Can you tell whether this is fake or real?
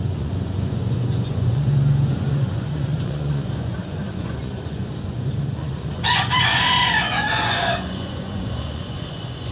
fake